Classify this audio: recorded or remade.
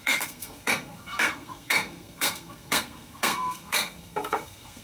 remade